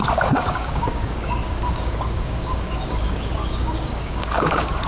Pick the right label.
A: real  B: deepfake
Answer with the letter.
B